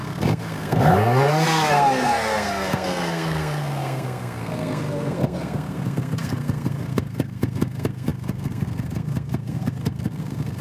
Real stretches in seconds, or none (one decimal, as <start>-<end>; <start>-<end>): none